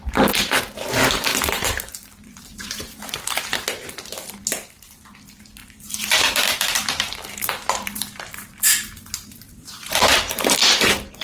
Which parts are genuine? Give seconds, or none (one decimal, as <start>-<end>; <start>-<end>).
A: 0.0-1.3; 3.4-5.6; 10.6-11.2